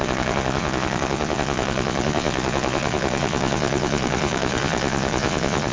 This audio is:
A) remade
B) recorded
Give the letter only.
A